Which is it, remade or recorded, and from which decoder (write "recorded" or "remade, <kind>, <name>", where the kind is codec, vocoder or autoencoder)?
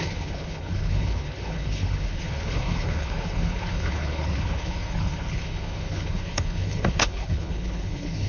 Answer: remade, codec, HILCodec